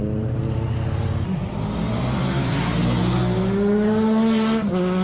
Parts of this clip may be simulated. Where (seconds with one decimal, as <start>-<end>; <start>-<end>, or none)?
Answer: none